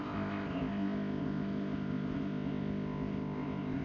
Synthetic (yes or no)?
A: yes